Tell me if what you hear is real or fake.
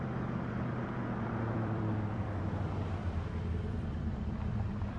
fake